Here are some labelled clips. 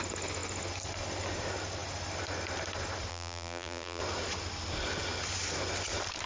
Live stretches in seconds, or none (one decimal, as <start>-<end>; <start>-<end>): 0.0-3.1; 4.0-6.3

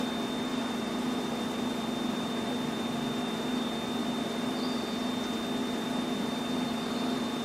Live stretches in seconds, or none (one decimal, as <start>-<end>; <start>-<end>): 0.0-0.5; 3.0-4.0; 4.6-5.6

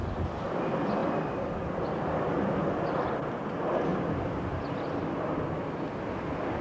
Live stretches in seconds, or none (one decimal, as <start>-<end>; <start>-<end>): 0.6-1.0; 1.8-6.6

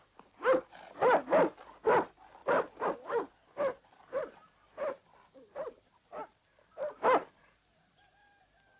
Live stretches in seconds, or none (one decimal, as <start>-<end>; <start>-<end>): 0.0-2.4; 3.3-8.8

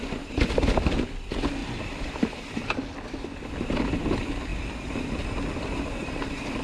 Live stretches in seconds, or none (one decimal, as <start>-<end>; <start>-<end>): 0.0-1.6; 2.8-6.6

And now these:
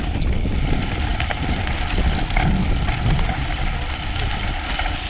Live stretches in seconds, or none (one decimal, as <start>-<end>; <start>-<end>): 0.0-1.1; 4.2-5.1

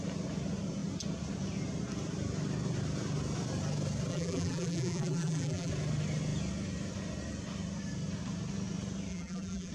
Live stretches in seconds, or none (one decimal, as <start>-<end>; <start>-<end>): 0.0-4.1; 5.7-9.1